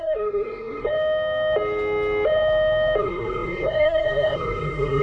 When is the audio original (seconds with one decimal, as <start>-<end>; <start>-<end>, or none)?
0.9-3.0